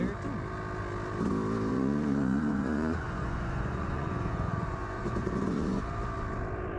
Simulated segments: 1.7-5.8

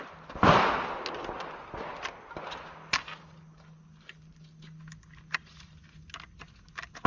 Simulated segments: none

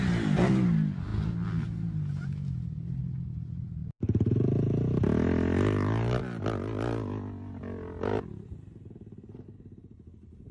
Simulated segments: none